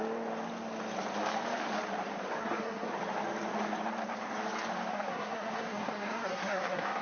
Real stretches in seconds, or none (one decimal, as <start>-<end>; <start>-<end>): 0.0-2.4; 2.9-4.9